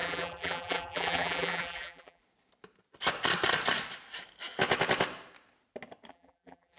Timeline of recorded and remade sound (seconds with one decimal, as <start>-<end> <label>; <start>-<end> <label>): 0.0-2.2 remade; 2.2-6.1 recorded; 6.1-6.8 remade